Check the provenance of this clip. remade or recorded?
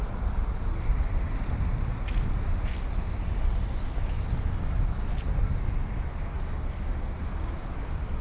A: recorded